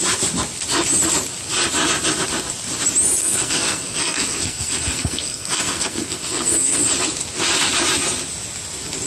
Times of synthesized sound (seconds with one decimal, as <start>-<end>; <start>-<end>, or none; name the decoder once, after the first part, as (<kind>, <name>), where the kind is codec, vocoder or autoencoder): 3.2-6.8 (codec, SNAC)